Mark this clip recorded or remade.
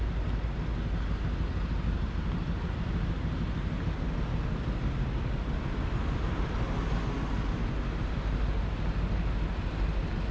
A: recorded